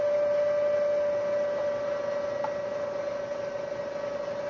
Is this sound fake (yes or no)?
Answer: no